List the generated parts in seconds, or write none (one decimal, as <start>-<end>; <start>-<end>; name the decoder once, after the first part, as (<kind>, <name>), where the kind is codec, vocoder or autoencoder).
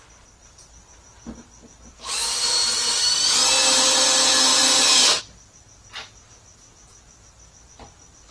2.2-3.1 (vocoder, BigVGAN v2); 4.5-5.2